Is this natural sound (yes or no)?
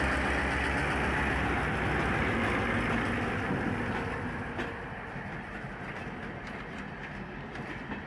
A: yes